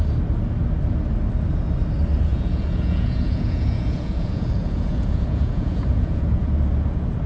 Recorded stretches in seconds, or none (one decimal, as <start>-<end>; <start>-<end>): 0.0-2.3; 6.5-7.3